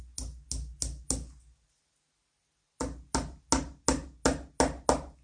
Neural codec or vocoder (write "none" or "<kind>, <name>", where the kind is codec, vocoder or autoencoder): none